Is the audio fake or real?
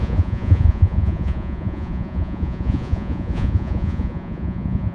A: fake